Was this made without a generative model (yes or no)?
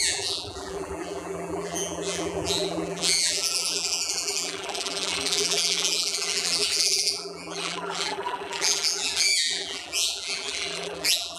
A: no